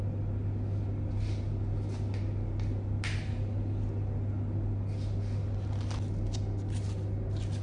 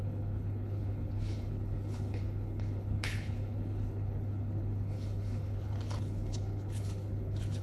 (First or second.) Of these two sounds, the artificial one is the second